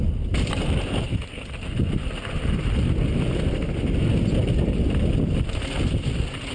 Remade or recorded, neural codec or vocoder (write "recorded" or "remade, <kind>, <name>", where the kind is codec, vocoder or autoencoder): recorded